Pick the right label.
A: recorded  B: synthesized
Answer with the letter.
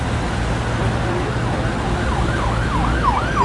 A